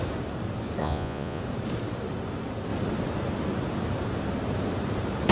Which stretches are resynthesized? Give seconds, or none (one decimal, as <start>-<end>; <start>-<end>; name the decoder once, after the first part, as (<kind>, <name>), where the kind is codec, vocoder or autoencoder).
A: 0.8-1.4 (vocoder, Vocos)